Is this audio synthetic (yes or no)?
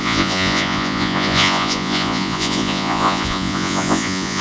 yes